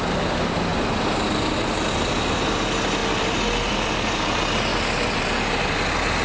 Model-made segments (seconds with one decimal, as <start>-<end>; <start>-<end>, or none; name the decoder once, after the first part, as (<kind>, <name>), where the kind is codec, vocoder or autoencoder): none